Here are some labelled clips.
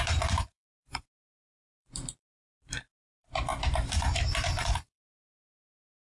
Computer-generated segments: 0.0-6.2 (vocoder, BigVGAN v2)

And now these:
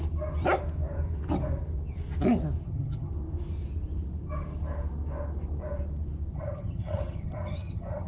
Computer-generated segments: 2.6-3.1 (vocoder, HiFi-GAN); 6.3-8.1

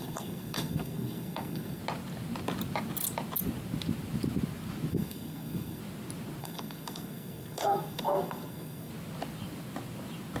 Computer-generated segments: 0.0-1.8 (codec, SNAC); 4.9-5.8; 6.4-8.9

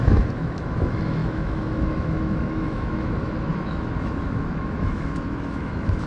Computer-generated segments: 0.0-6.1 (autoencoder, DAC-VAE)

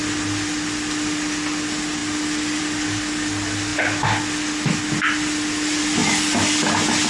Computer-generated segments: none

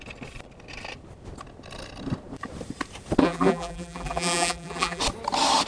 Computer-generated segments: 3.2-5.0 (vocoder, BigVGAN v2)

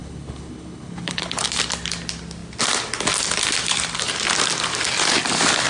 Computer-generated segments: 0.0-1.4 (codec, HILCodec)

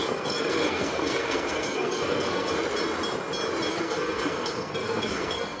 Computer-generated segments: 0.0-2.5 (codec, SNAC); 3.7-5.6